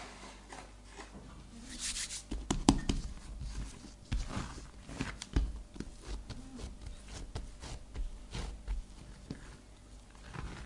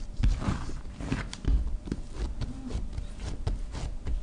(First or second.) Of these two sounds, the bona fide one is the first